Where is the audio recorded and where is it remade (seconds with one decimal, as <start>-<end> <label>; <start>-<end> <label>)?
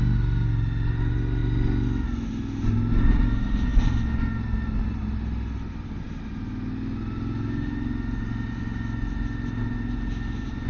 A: 0.0-10.7 recorded